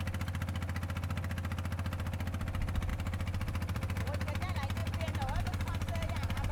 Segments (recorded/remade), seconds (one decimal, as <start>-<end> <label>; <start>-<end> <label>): 0.0-2.9 recorded; 2.9-4.0 remade; 4.0-6.5 recorded